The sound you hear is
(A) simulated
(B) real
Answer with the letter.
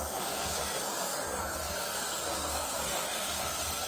A